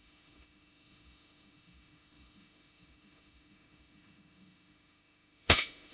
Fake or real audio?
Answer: fake